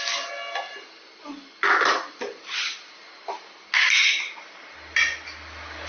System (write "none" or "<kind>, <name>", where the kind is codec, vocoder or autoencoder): none